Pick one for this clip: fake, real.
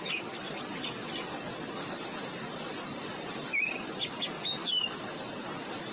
real